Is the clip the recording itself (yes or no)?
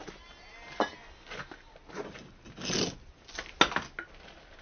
yes